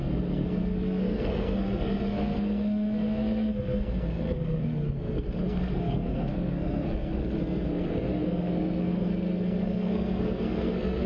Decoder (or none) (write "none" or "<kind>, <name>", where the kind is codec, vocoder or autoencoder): codec, SNAC